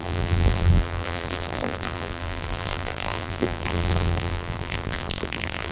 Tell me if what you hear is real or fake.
fake